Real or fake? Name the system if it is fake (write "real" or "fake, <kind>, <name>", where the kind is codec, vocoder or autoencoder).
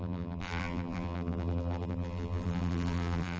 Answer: fake, vocoder, BigVGAN v2